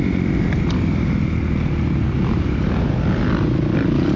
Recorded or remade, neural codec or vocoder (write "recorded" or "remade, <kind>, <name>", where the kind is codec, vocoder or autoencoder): recorded